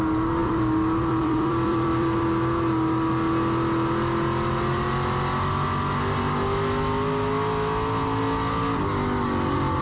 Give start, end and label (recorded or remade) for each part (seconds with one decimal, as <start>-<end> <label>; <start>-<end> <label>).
0.0-0.4 recorded; 0.4-2.2 remade; 2.2-9.8 recorded